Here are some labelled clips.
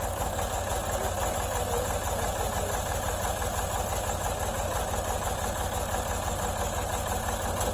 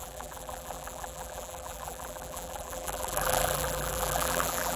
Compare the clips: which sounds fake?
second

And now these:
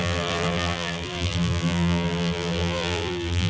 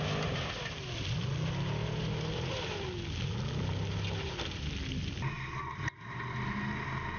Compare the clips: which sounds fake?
first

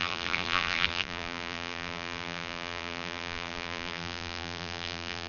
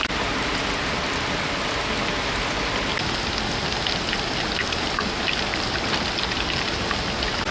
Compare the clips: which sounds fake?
first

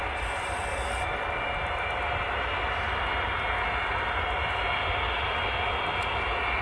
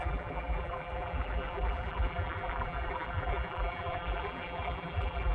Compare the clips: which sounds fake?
second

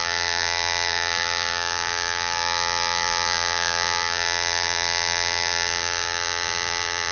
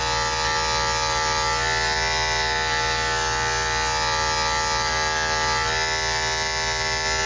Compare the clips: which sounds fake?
first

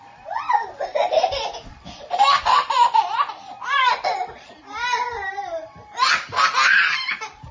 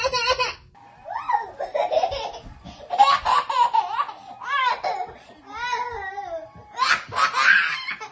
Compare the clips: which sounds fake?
first